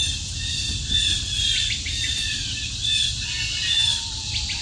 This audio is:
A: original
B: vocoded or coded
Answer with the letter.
A